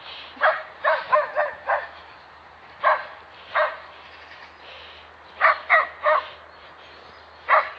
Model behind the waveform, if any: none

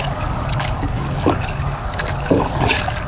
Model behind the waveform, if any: codec, DAC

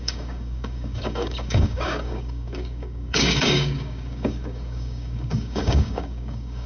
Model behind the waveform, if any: codec, DAC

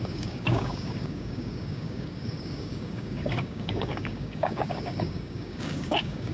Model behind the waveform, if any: codec, DAC